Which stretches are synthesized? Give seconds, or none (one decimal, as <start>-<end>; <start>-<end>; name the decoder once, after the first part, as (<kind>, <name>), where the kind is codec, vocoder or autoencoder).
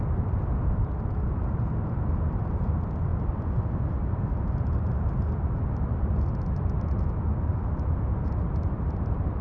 none